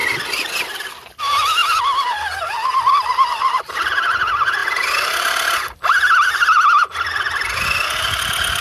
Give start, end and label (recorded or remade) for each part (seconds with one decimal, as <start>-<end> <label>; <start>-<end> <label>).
0.0-0.6 recorded; 0.6-8.6 remade